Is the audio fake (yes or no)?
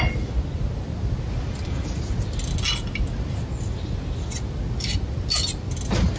no